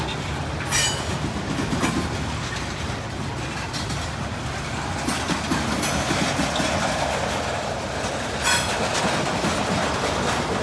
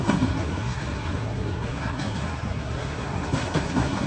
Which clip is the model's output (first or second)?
second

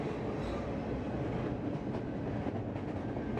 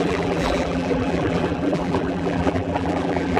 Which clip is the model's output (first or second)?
second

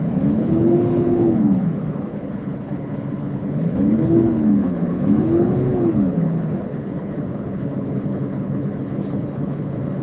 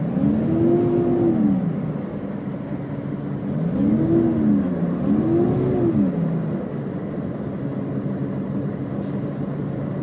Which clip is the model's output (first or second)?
first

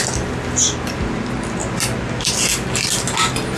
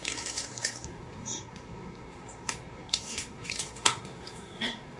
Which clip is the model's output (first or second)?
second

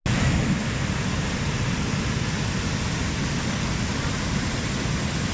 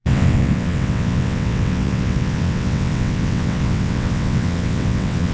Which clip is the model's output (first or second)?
second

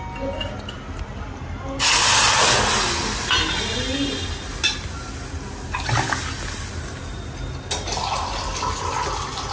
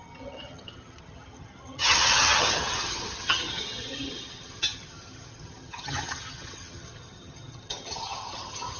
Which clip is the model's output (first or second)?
second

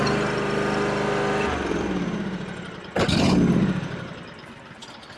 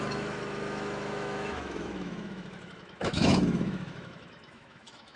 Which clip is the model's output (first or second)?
second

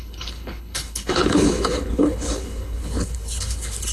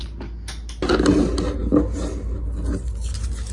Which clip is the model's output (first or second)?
first